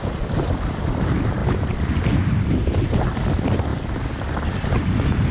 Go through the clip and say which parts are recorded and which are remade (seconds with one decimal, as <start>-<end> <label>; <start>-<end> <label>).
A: 0.0-1.4 remade; 1.4-2.5 recorded; 2.5-3.7 remade; 3.7-4.7 recorded; 4.7-5.3 remade